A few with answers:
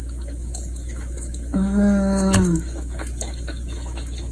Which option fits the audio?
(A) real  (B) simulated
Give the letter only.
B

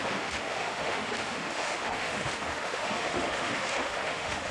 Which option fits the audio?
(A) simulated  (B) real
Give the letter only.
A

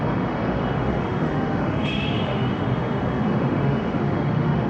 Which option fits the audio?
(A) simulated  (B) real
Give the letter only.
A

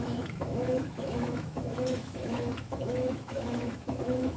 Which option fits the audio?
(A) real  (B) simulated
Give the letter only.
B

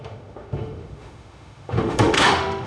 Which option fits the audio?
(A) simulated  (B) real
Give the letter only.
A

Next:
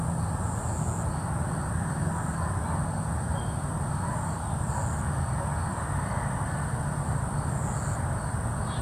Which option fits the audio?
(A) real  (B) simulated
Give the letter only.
A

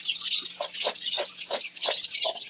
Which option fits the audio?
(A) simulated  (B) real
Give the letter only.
B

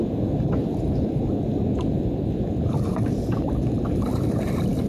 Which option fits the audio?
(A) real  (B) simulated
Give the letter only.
A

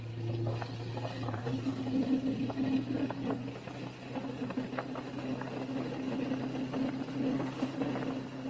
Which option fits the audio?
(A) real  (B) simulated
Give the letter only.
A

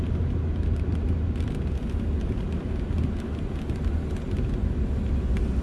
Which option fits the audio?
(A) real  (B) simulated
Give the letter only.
A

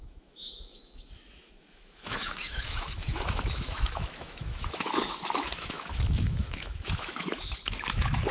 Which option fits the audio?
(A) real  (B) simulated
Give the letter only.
B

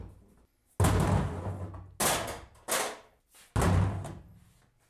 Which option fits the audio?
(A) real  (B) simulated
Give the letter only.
A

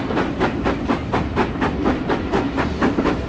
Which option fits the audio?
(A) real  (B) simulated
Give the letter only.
A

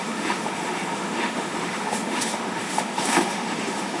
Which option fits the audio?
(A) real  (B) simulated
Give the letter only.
B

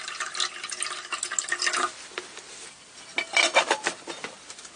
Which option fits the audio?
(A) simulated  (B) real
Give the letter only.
B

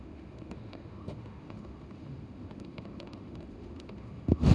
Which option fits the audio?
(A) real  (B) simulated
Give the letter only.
B